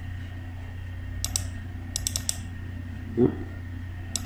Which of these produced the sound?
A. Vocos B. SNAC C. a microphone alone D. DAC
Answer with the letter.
C